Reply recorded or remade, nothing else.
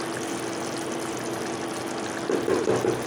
recorded